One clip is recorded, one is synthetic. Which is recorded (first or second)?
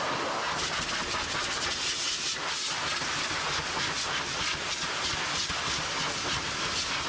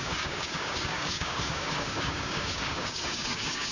first